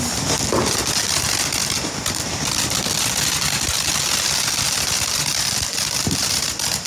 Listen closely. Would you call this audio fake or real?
real